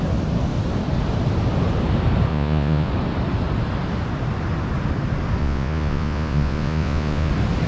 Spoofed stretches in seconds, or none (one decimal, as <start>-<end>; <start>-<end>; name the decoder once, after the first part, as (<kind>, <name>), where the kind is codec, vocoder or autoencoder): 2.3-2.9 (vocoder, Vocos); 5.4-7.3